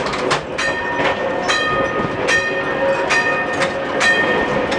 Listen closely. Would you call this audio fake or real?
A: real